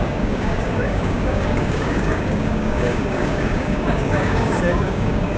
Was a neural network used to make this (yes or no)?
yes